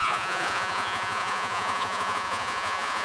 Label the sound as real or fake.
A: fake